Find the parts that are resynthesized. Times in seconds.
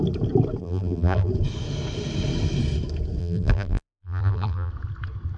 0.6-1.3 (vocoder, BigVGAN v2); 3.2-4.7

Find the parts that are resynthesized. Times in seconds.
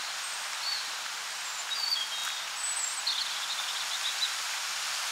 none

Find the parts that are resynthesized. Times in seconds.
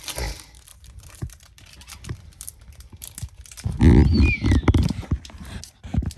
0.7-3.8 (vocoder, BigVGAN v2)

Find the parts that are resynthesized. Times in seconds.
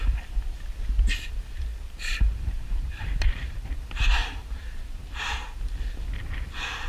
1.7-3.8 (vocoder, BigVGAN v2); 4.2-5.6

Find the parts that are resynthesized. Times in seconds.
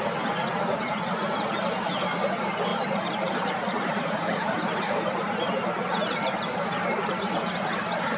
2.7-7.4 (vocoder, BigVGAN v2)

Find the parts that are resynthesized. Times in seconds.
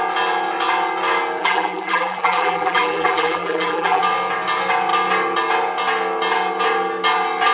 1.4-4.0 (vocoder, BigVGAN v2)